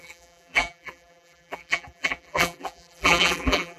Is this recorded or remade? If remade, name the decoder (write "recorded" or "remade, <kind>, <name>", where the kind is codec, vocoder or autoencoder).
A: remade, vocoder, BigVGAN v2